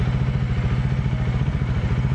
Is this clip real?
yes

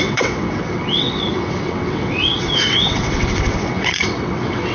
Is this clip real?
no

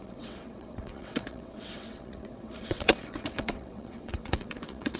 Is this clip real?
no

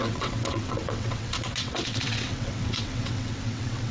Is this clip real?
no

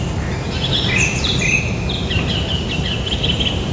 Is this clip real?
yes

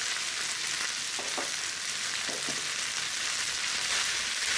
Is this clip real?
yes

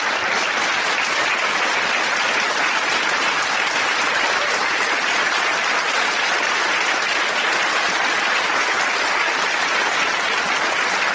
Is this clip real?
yes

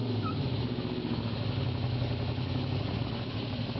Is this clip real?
yes